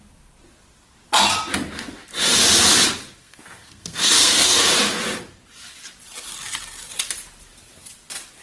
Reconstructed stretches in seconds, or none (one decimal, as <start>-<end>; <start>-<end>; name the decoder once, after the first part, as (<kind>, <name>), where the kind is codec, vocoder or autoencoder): 3.2-4.6 (codec, SNAC)